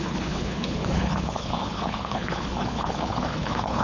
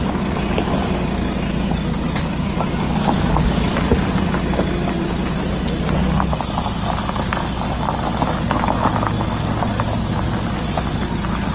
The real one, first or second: second